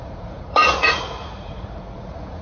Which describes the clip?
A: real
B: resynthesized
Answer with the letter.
B